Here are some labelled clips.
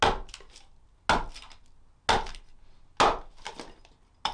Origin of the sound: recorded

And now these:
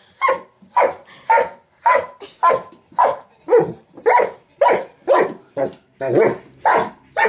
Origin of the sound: recorded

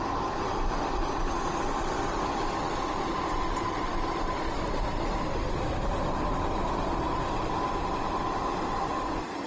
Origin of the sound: recorded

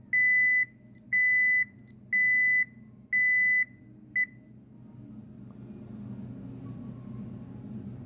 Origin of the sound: recorded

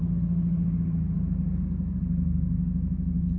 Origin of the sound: recorded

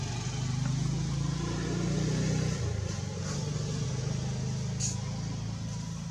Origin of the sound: recorded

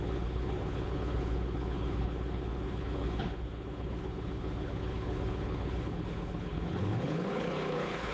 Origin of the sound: remade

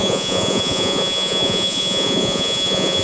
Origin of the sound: remade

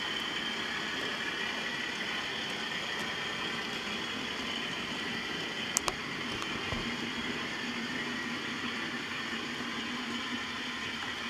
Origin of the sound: recorded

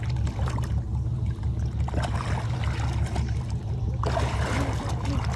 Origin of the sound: recorded